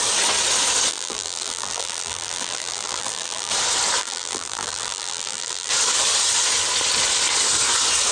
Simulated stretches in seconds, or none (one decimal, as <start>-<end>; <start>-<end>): 0.9-3.5; 4.0-5.7